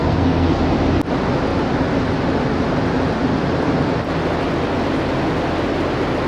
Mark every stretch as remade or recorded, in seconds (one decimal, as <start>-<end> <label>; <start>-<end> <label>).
0.0-0.6 remade; 0.6-6.3 recorded